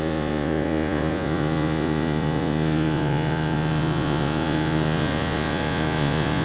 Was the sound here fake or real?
fake